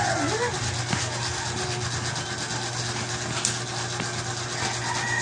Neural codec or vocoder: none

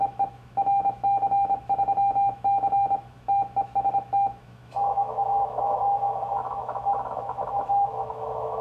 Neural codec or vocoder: autoencoder, DAC-VAE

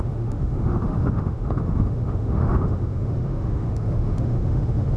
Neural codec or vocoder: autoencoder, DAC-VAE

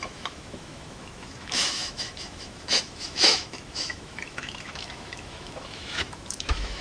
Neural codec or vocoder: autoencoder, DAC-VAE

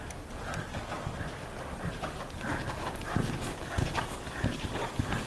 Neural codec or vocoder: none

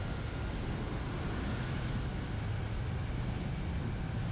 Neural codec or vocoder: none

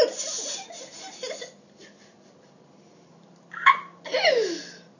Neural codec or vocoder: none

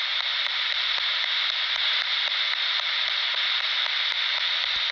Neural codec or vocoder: none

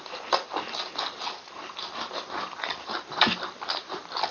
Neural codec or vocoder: none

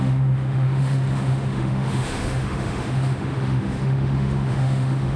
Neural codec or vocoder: autoencoder, DAC-VAE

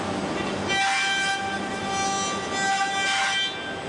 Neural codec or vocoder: none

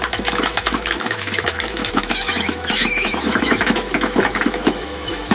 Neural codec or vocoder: autoencoder, DAC-VAE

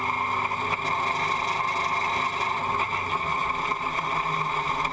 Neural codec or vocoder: none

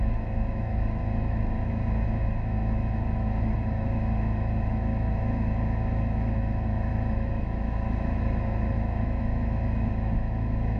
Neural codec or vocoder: autoencoder, DAC-VAE